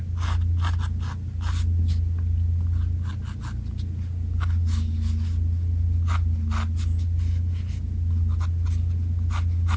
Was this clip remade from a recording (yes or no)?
no